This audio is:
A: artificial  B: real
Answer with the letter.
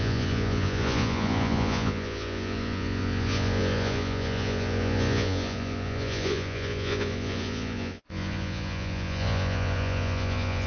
A